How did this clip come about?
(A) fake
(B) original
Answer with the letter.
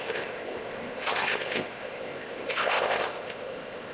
A